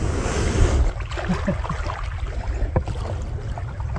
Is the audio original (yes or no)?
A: yes